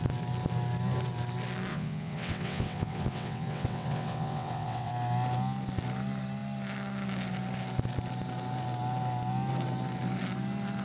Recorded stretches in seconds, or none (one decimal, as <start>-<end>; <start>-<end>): 0.0-1.7; 4.9-10.8